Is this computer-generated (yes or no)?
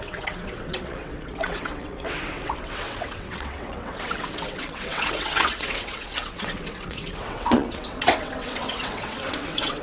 yes